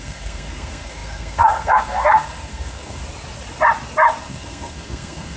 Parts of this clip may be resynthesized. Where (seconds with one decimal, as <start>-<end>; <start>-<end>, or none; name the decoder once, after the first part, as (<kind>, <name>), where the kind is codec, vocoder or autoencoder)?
0.0-3.0 (codec, SNAC); 4.2-5.4

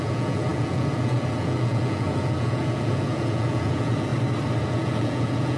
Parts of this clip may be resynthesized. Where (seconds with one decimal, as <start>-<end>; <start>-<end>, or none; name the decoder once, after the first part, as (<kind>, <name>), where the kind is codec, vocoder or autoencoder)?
0.0-4.1 (vocoder, Vocos); 4.6-5.6

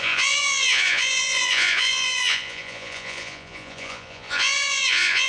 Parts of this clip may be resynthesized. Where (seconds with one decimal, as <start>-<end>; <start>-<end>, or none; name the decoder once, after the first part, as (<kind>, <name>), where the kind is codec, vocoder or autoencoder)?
0.0-5.3 (vocoder, Vocos)

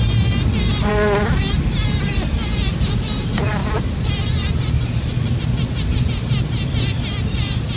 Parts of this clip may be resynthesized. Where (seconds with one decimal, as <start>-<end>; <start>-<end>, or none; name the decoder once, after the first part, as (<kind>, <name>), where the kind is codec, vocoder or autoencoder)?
none

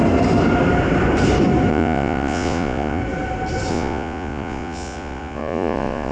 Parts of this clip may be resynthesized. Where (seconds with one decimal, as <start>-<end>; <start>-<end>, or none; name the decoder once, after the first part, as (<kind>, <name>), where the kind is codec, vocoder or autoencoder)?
1.7-3.0 (vocoder, Vocos); 3.7-6.1

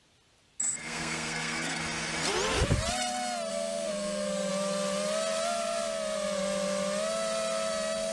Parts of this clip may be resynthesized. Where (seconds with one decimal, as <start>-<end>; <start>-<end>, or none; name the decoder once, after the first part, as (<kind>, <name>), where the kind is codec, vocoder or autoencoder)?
0.8-1.8 (codec, SNAC); 3.5-4.5